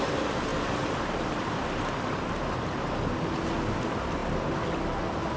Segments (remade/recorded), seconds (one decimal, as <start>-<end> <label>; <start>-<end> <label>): 0.0-5.4 recorded